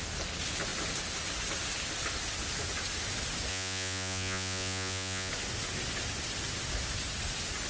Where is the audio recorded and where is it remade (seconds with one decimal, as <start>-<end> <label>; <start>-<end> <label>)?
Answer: 0.0-3.5 recorded; 3.5-5.3 remade; 5.3-7.7 recorded